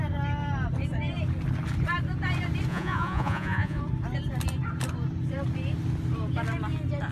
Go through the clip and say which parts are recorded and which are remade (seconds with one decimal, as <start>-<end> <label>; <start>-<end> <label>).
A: 0.0-2.7 recorded; 2.7-3.8 remade; 3.8-7.1 recorded